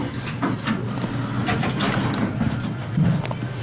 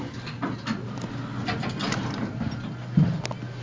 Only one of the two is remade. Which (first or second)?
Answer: first